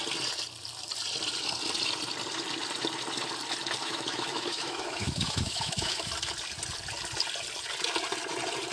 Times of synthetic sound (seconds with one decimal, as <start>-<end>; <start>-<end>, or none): 3.8-6.1